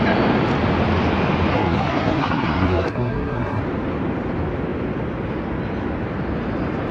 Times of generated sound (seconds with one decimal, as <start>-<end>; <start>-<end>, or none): 1.5-3.6